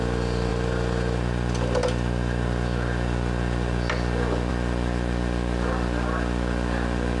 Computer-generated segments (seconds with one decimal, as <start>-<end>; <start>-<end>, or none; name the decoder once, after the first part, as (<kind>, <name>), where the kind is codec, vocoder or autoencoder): none